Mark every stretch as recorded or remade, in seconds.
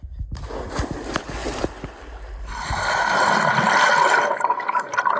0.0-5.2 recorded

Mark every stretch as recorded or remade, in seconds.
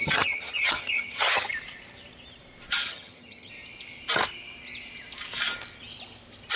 0.0-1.5 remade; 1.5-2.8 recorded; 2.8-3.5 remade; 3.5-6.6 recorded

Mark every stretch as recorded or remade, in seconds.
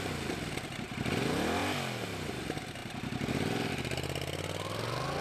0.0-5.2 recorded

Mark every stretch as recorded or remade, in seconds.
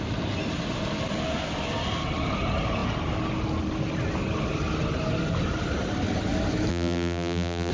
0.0-6.7 recorded; 6.7-7.7 remade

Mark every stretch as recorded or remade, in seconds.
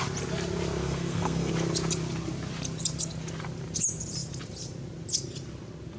0.0-0.8 recorded; 0.8-1.5 remade; 1.5-6.0 recorded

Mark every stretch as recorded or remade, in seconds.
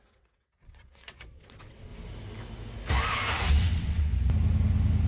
0.0-1.9 remade; 1.9-3.5 recorded; 3.5-4.1 remade; 4.1-5.1 recorded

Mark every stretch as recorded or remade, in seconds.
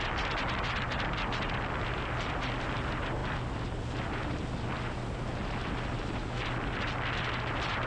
0.0-7.9 recorded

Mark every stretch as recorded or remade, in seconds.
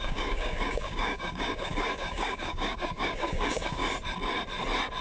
0.0-3.8 remade; 3.8-5.0 recorded